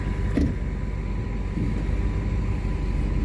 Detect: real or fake real